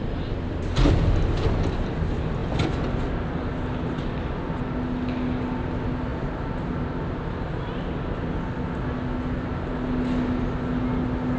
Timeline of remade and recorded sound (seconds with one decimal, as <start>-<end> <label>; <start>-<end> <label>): 0.0-11.4 recorded